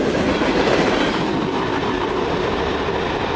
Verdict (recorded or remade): recorded